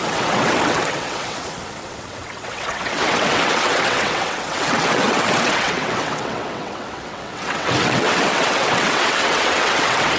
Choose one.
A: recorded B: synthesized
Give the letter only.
B